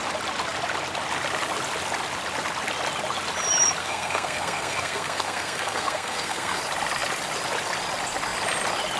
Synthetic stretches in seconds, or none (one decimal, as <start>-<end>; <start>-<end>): 3.8-6.6